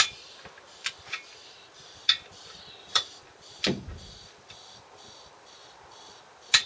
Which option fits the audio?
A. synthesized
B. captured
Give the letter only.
A